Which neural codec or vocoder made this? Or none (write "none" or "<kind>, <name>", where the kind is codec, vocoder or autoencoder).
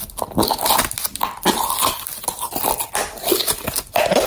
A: none